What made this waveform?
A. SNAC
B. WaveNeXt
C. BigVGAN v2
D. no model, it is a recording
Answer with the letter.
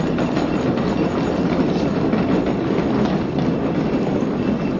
D